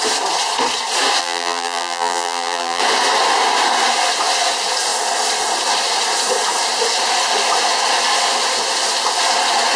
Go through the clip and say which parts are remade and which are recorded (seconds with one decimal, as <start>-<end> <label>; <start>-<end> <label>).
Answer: 0.0-1.2 recorded; 1.2-2.8 remade; 2.8-9.8 recorded